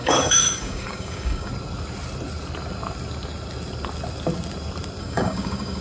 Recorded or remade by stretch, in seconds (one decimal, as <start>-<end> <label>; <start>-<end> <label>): 0.0-1.5 remade; 1.5-5.0 recorded; 5.0-5.8 remade